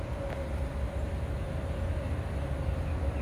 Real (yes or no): yes